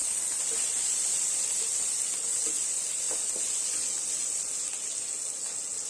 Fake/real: real